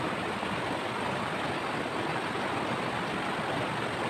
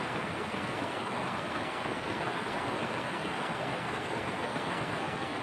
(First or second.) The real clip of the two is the first